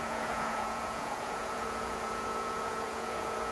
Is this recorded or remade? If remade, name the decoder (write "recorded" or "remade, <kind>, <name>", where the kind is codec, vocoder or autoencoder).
remade, vocoder, Vocos